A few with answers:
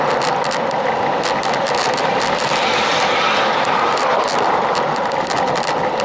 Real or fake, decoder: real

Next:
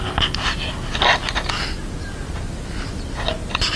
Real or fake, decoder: real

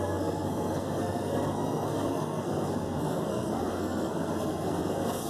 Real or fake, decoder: fake, codec, SNAC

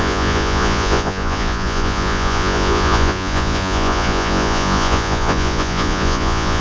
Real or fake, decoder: fake, vocoder, Vocos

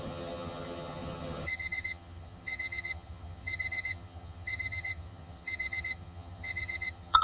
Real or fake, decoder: fake, vocoder, HiFi-GAN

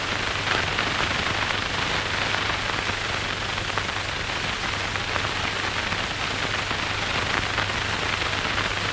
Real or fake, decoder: real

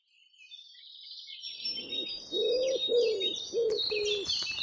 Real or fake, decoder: fake, vocoder, BigVGAN v2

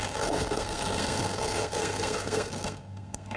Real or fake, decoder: fake, codec, SNAC